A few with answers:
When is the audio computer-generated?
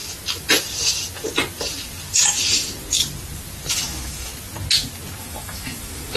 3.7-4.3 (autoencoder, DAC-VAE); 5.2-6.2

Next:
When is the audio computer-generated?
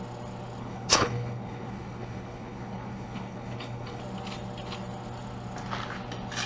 0.6-4.0 (codec, HILCodec)